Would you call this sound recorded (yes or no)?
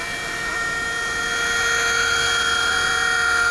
yes